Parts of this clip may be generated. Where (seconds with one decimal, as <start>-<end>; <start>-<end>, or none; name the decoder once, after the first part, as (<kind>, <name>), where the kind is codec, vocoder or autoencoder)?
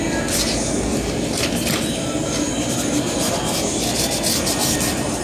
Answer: none